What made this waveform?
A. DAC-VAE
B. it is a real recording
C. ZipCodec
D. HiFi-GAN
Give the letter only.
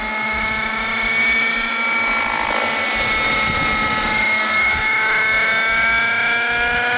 B